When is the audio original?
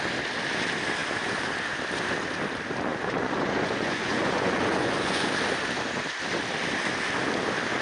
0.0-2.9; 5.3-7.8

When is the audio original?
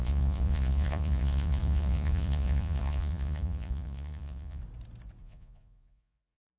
4.6-5.2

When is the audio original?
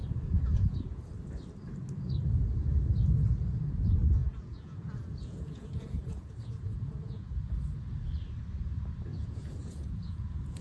1.0-4.2; 7.5-9.1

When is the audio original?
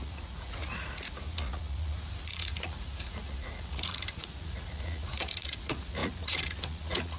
none